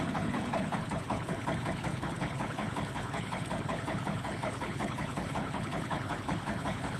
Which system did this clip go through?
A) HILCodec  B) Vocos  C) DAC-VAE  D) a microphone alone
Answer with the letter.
A